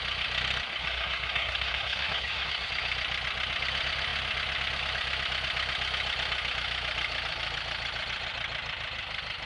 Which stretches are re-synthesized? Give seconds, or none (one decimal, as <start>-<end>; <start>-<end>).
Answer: 0.8-2.7